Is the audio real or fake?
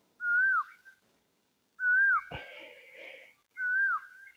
fake